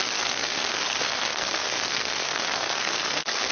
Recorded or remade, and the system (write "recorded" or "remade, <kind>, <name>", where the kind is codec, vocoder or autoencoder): remade, codec, SNAC